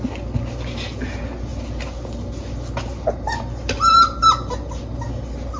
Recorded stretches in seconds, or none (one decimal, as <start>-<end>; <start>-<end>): 0.0-5.6